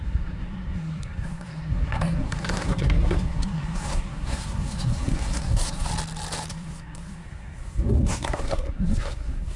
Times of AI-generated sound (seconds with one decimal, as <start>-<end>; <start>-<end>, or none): 0.0-5.9; 6.5-9.6